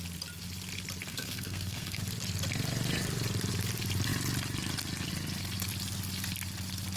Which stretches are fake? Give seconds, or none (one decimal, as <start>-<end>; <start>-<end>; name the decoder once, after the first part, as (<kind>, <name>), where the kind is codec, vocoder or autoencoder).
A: 1.1-2.0 (codec, SNAC)